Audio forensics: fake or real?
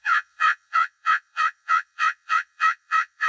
fake